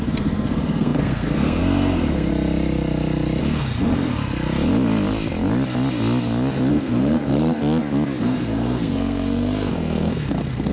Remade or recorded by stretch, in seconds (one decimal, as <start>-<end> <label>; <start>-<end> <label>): 0.0-2.3 remade; 2.3-3.4 recorded; 3.4-4.1 remade; 4.1-6.7 recorded; 6.7-7.6 remade; 7.6-8.2 recorded; 8.2-10.7 remade